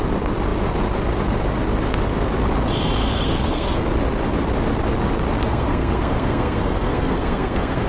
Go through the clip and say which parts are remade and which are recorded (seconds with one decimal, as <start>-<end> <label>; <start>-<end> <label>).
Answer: 0.0-3.0 recorded; 3.0-3.8 remade; 3.8-5.4 recorded; 5.4-7.9 remade